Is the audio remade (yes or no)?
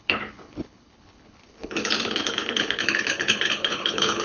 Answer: yes